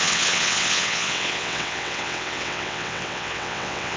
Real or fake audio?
fake